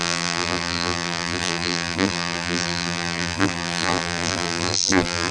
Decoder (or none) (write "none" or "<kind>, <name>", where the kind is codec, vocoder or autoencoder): vocoder, BigVGAN v2